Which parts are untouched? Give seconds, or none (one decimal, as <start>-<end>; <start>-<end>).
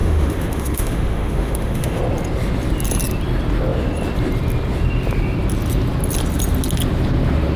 2.0-7.6